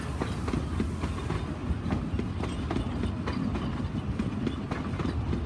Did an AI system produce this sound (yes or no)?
no